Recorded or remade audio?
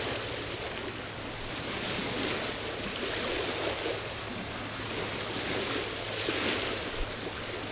recorded